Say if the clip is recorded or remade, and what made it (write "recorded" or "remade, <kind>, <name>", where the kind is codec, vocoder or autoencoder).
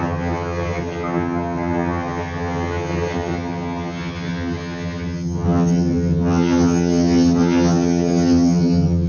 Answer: remade, vocoder, HiFi-GAN